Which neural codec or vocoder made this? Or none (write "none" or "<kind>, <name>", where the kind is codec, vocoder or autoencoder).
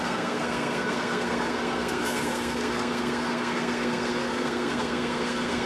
codec, SNAC